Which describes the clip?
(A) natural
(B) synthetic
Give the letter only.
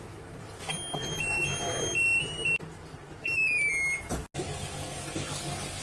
A